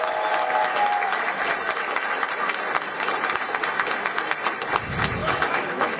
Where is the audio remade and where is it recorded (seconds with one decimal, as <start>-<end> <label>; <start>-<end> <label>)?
0.0-5.2 recorded; 5.2-6.0 remade